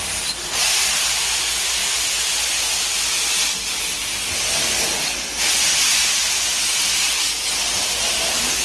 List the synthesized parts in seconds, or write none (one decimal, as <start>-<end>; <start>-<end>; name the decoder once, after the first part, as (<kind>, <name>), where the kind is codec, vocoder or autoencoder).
none